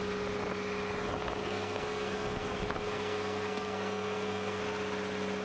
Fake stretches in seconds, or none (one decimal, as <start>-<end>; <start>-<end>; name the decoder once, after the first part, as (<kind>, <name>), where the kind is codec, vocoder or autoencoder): 1.4-4.6 (codec, SNAC)